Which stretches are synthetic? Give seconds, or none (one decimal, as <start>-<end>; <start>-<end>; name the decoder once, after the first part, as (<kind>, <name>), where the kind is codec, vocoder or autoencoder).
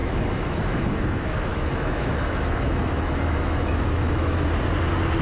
0.0-0.8 (autoencoder, DAC-VAE); 1.5-4.5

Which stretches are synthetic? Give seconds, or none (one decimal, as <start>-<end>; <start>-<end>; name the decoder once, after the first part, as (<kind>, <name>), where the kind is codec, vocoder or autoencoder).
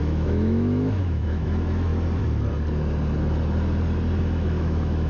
0.0-1.9 (autoencoder, DAC-VAE); 4.2-5.1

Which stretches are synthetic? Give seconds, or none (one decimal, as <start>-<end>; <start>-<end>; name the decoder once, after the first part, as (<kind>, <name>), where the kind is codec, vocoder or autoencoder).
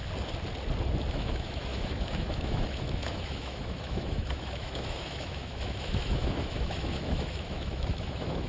1.1-8.5 (autoencoder, DAC-VAE)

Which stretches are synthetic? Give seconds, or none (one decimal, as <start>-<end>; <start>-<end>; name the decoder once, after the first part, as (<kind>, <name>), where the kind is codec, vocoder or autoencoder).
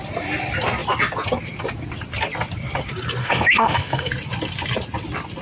3.2-4.1 (autoencoder, DAC-VAE)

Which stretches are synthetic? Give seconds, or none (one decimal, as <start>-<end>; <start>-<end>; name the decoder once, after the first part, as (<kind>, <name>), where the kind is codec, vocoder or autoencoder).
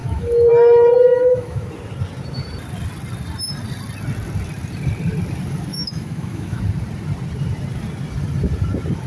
0.0-0.5 (autoencoder, DAC-VAE); 1.1-1.7; 5.7-6.6